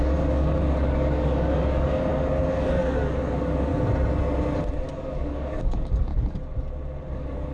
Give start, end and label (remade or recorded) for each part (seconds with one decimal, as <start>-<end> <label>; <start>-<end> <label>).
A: 0.0-3.7 remade; 3.7-4.9 recorded; 4.9-6.1 remade; 6.1-7.1 recorded; 7.1-7.5 remade